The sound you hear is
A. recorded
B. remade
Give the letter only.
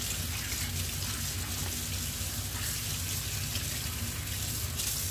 A